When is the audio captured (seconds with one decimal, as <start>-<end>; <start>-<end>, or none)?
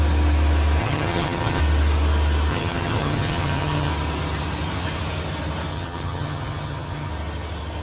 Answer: 0.0-0.8; 1.6-2.5; 3.9-5.7; 7.1-7.8